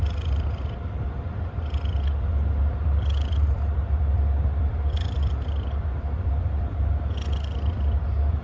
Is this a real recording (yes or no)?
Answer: no